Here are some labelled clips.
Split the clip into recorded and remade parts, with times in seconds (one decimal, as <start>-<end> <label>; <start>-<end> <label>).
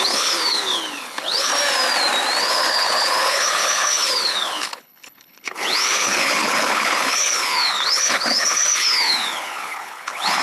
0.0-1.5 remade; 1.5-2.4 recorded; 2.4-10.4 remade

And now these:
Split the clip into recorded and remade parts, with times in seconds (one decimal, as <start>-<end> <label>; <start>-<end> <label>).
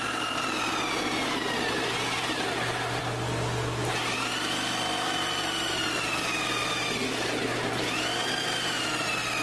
0.0-9.4 recorded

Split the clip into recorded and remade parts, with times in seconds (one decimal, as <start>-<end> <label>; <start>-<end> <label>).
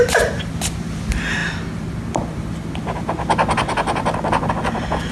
0.0-5.1 recorded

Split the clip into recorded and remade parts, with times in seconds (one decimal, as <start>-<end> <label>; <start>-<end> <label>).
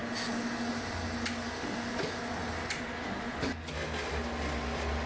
0.0-5.1 recorded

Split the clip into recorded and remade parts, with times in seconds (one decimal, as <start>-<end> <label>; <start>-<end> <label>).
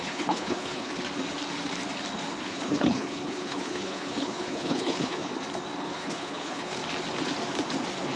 0.0-0.9 remade; 0.9-2.4 recorded; 2.4-5.3 remade; 5.3-5.8 recorded; 5.8-6.8 remade; 6.8-8.2 recorded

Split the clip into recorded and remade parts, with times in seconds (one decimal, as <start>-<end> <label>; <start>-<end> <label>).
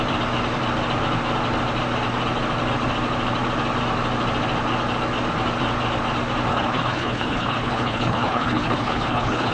0.0-6.5 recorded; 6.5-9.5 remade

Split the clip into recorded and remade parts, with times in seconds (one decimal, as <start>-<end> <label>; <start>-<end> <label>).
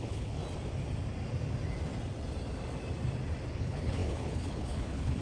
0.0-0.4 remade; 0.4-3.5 recorded; 3.5-5.2 remade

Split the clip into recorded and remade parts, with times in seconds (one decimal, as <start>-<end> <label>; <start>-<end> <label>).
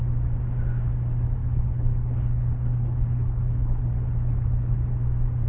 0.0-1.4 recorded; 1.4-4.7 remade; 4.7-5.5 recorded